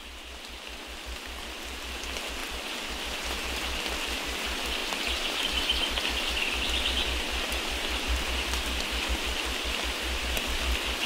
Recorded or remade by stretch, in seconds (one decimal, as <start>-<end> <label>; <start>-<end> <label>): 0.0-11.1 recorded